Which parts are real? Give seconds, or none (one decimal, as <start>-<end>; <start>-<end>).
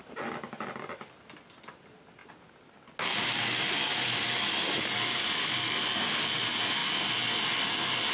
0.0-8.1